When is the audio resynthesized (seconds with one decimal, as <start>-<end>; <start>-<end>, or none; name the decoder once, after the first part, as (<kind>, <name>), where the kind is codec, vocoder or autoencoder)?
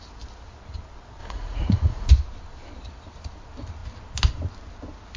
1.2-2.1 (vocoder, Vocos)